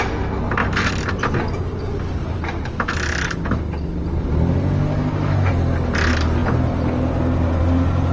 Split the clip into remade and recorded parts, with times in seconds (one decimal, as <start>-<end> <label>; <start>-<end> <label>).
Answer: 0.0-8.1 recorded